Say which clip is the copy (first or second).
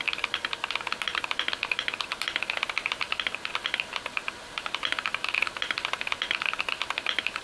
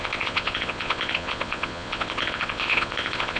second